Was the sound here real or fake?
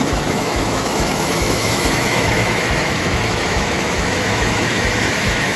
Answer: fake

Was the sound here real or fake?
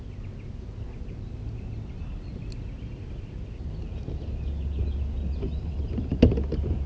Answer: real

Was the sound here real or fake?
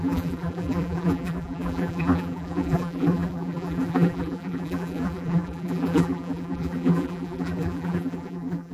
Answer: fake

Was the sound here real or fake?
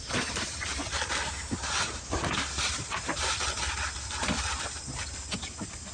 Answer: real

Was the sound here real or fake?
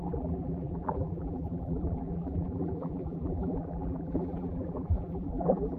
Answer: fake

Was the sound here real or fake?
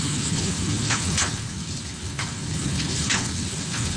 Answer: fake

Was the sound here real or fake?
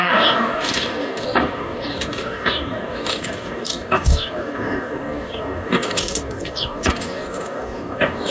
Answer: fake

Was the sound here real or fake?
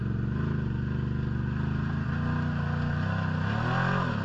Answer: real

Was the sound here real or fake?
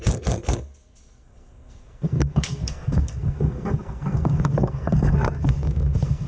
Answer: fake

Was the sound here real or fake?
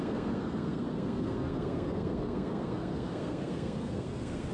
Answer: fake